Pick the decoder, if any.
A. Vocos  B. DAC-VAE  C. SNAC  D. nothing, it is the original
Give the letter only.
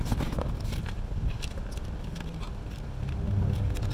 D